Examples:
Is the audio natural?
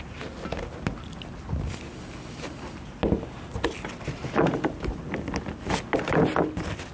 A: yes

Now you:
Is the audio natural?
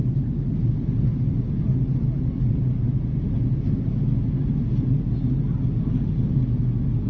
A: yes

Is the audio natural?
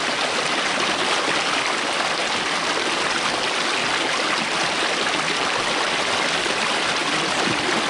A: yes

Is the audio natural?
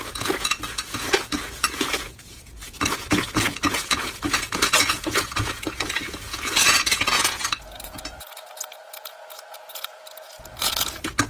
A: no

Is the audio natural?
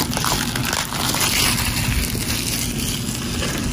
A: yes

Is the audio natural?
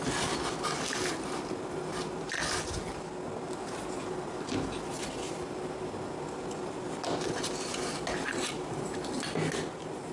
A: yes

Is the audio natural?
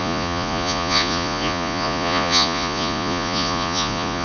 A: no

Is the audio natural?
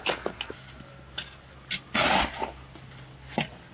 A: yes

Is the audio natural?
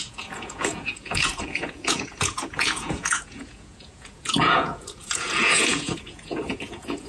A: no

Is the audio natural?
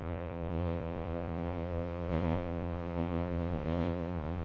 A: no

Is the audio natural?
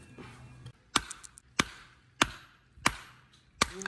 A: yes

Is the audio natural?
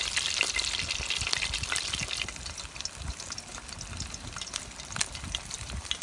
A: yes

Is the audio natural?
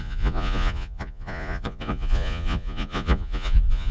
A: no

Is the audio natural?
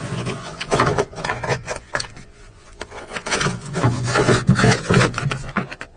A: no